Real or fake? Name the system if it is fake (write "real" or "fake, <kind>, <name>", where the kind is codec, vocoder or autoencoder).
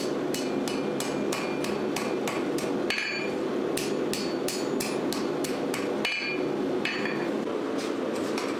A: real